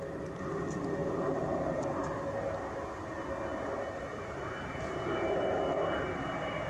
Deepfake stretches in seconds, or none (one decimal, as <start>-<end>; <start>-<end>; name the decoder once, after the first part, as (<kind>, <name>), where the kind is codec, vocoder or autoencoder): 1.0-1.8 (vocoder, BigVGAN v2)